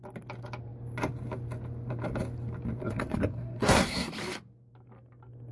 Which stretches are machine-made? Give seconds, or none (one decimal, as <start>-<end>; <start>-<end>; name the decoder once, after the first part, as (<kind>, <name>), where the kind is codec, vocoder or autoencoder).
2.8-4.1 (codec, SNAC)